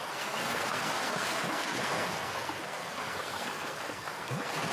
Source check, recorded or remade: remade